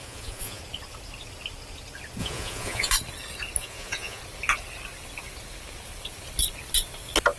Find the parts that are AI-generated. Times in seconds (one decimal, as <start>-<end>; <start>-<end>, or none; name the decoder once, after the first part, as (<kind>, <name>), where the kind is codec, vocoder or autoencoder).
0.0-0.6 (vocoder, Vocos); 2.2-2.9; 3.6-4.2